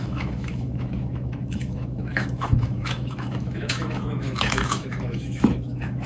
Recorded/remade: remade